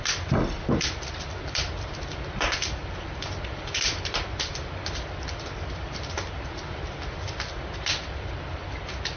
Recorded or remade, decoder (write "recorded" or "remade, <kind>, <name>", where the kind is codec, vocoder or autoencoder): recorded